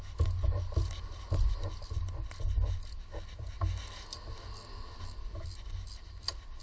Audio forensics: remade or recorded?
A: recorded